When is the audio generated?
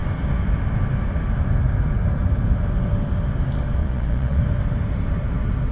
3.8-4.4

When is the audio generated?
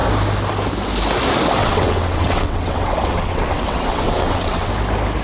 1.6-4.7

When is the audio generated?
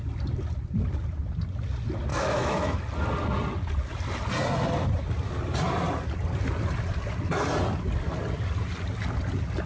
2.1-2.8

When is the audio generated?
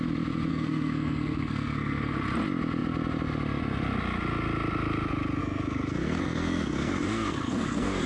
0.5-2.1; 5.4-8.1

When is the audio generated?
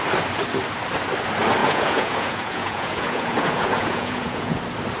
1.6-4.6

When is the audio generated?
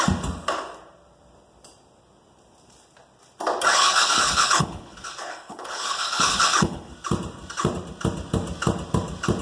3.7-6.9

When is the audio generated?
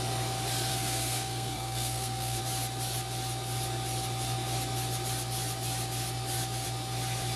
0.7-2.4